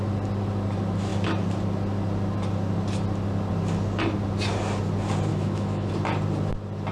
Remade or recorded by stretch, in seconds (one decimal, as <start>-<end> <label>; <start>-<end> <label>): 0.0-5.3 recorded; 5.3-5.9 remade; 5.9-6.9 recorded